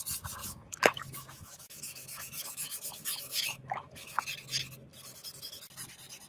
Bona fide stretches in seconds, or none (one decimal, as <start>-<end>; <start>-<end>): 0.0-0.4; 4.2-6.3